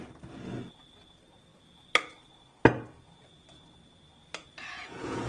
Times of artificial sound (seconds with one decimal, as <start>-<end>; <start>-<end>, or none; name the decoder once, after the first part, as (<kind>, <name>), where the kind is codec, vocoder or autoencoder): 4.4-5.3 (vocoder, Vocos)